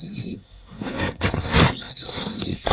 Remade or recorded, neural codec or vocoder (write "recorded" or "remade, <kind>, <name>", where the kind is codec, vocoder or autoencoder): remade, codec, SNAC